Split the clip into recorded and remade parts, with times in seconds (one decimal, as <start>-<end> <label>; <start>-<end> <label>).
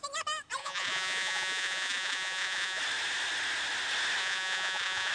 0.0-0.6 recorded; 0.6-2.8 remade; 2.8-4.2 recorded; 4.2-5.1 remade